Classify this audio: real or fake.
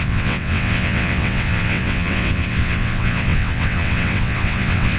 fake